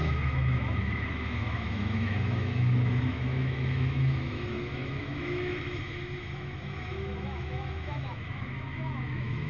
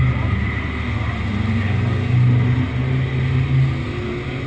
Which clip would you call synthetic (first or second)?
first